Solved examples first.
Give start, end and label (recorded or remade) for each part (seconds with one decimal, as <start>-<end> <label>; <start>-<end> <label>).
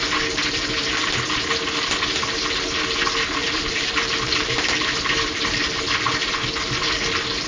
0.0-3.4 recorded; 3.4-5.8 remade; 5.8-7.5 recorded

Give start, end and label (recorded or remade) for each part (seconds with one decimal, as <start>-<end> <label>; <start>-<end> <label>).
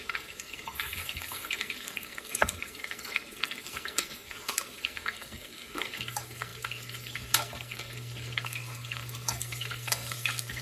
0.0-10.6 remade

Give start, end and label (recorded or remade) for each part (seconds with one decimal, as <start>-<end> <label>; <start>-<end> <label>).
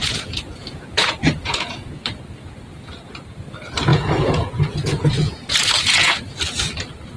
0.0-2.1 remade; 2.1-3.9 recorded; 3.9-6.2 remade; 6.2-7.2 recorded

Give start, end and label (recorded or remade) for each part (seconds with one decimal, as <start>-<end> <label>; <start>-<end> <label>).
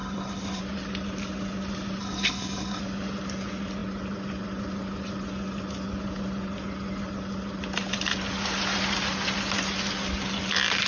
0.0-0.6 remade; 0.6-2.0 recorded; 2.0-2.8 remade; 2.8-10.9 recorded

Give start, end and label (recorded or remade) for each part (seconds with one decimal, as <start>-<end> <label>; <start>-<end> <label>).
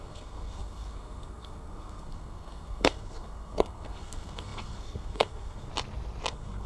0.0-5.7 remade; 5.7-6.3 recorded; 6.3-6.7 remade